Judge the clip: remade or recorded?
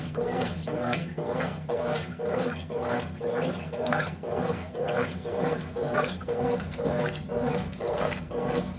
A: remade